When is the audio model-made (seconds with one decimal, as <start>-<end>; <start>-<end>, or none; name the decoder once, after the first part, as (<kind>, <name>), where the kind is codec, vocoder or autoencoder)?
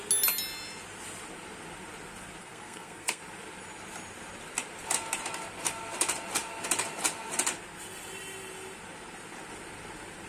2.4-3.2 (codec, SNAC)